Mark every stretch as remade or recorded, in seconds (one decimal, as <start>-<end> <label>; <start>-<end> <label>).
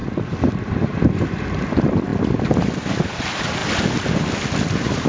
0.0-5.1 recorded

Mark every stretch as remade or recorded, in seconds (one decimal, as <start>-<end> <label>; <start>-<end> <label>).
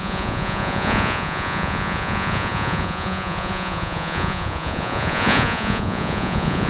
0.0-6.7 remade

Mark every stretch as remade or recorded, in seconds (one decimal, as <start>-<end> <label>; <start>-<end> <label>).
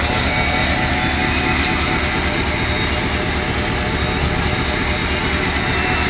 0.0-6.1 recorded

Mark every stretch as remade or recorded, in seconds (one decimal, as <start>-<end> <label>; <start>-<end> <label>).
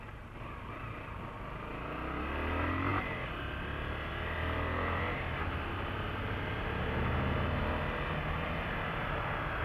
0.0-9.6 recorded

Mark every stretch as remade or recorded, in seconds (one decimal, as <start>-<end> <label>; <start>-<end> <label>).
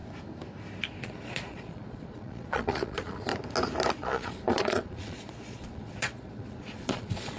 0.0-1.0 recorded; 1.0-3.3 remade; 3.3-3.9 recorded; 3.9-7.4 remade